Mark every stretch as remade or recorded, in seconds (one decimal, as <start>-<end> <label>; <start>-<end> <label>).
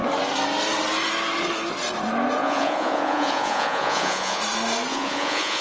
0.0-2.4 recorded; 2.4-4.4 remade; 4.4-4.9 recorded; 4.9-5.6 remade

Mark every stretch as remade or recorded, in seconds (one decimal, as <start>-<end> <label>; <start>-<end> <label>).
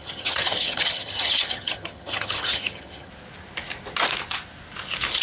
0.0-3.1 remade; 3.1-5.2 recorded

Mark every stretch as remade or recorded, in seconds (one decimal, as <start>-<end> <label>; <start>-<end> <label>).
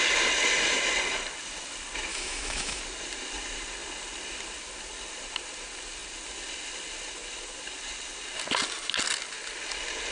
0.0-2.1 recorded; 2.1-2.8 remade; 2.8-10.1 recorded